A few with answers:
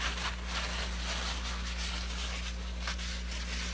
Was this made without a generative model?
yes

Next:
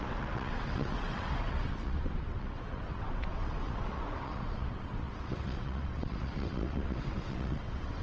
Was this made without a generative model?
no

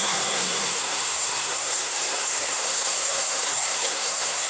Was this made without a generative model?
no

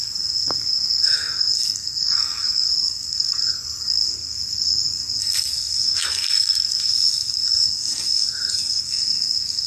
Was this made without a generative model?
no